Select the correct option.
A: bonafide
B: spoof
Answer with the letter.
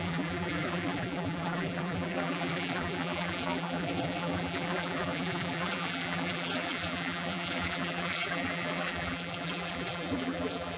B